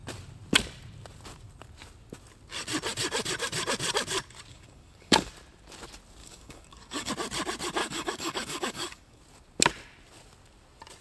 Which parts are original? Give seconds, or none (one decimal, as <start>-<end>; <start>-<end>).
0.0-4.5; 5.3-6.2; 7.1-7.8; 9.2-11.0